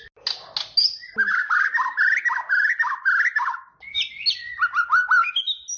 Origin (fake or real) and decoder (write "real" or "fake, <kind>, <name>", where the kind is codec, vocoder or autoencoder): real